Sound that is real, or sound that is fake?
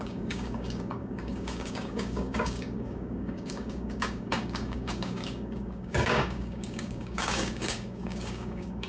fake